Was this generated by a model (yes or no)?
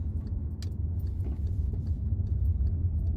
no